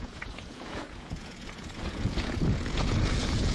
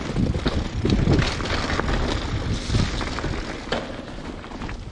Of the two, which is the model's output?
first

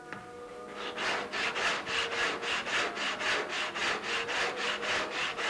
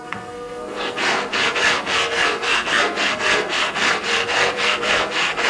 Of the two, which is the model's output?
second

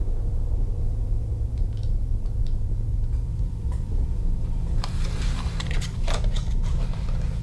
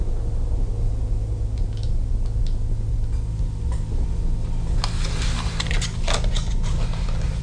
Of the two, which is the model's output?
first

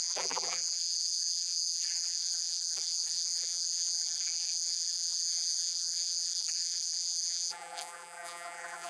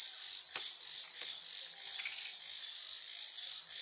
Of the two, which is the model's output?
first